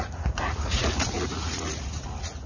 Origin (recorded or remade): remade